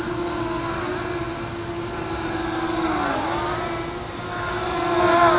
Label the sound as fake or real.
real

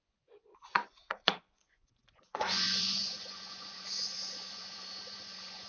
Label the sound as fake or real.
fake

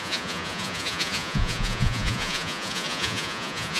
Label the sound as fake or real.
fake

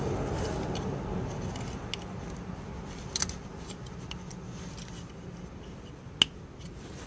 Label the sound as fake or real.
real